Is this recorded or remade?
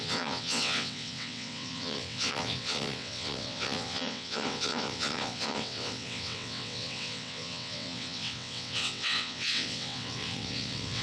remade